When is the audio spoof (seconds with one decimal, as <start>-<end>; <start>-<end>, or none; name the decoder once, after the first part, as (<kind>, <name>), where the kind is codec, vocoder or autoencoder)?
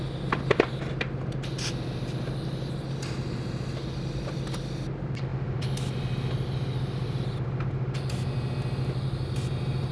none